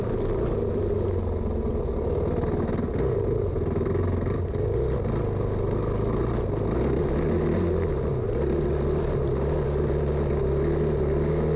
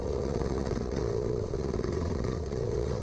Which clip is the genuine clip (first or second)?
first